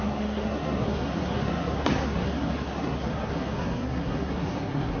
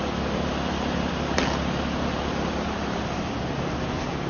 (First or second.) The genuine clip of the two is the second